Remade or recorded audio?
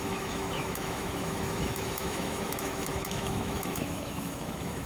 remade